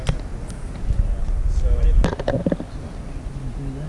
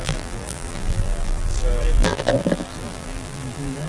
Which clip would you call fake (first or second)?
second